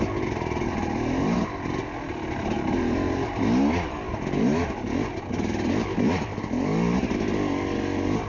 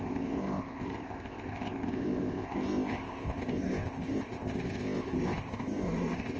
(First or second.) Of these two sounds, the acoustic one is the first